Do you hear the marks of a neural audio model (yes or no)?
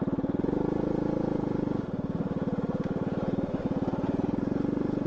no